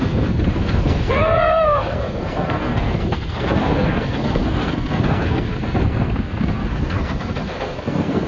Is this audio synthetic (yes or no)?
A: yes